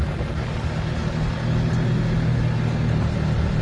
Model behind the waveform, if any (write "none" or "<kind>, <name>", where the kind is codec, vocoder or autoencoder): none